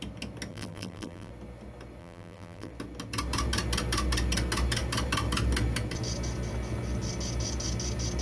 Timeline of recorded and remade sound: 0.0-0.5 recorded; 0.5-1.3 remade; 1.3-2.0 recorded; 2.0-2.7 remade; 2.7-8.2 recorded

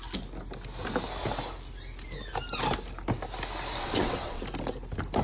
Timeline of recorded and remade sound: 0.0-3.8 recorded; 3.8-4.4 remade; 4.4-5.2 recorded

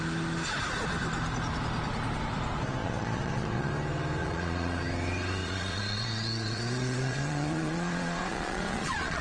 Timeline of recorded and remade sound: 0.0-2.8 recorded; 2.8-3.7 remade; 3.7-4.2 recorded; 4.2-4.8 remade; 4.8-5.4 recorded; 5.4-9.2 remade

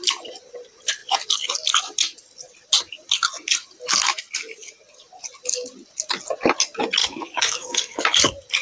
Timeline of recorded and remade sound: 0.0-7.0 recorded; 7.0-8.0 remade; 8.0-8.6 recorded

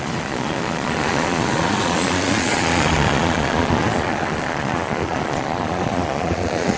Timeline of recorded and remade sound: 0.0-6.8 remade